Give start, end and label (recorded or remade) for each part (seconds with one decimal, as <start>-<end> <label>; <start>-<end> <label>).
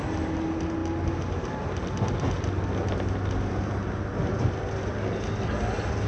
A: 0.0-6.1 recorded